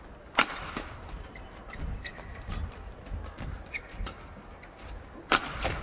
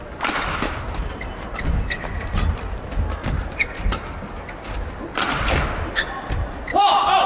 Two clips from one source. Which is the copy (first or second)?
first